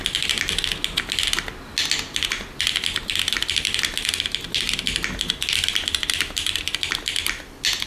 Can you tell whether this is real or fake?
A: real